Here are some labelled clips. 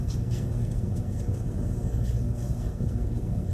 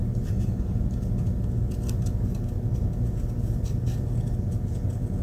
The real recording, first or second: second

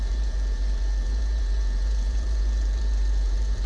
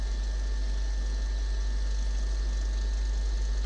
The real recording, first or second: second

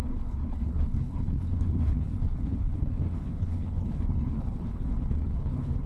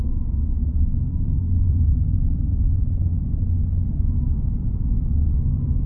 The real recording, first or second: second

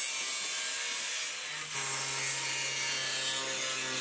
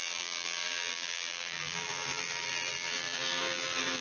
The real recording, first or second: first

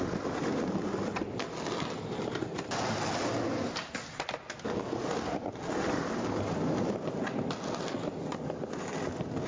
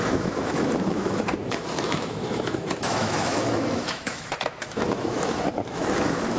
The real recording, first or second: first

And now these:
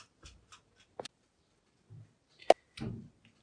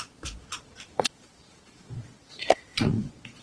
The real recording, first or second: first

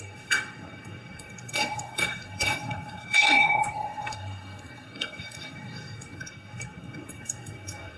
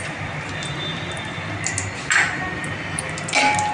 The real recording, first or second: second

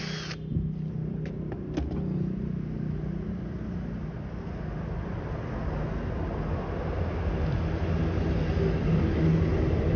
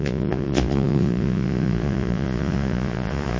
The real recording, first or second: first